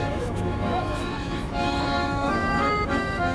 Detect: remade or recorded remade